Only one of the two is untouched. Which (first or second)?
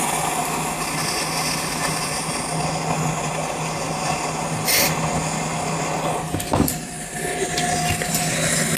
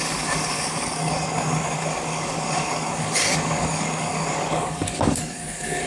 first